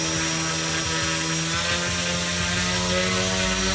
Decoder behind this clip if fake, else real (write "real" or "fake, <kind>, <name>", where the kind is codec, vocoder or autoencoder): real